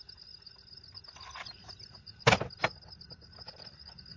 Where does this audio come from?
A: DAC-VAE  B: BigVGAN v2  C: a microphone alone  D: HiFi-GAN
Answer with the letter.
C